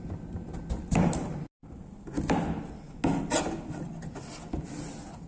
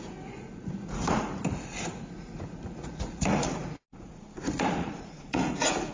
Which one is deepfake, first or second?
second